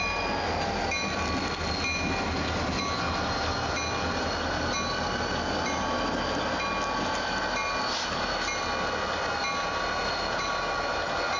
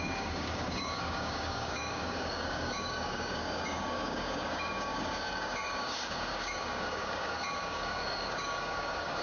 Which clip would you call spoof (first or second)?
second